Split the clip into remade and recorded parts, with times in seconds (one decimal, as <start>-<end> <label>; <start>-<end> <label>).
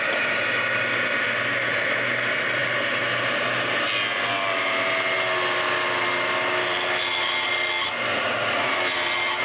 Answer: 0.0-8.1 recorded; 8.1-8.8 remade; 8.8-9.4 recorded